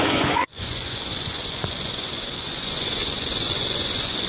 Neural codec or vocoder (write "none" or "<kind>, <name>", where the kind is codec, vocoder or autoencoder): vocoder, Vocos